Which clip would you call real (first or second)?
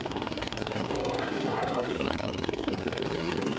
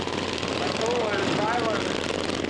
second